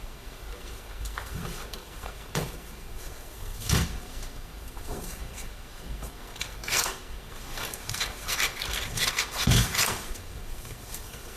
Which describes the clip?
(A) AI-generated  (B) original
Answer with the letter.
A